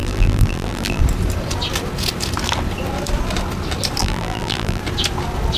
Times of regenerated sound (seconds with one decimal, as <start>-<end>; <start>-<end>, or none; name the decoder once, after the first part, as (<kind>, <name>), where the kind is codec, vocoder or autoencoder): 0.0-1.0 (vocoder, BigVGAN v2); 4.0-4.8